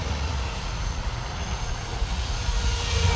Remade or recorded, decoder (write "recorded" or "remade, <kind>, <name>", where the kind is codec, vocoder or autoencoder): remade, vocoder, Vocos